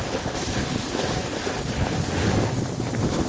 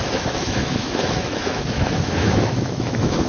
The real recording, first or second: first